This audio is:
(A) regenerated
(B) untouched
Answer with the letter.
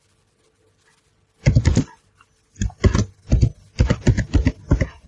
B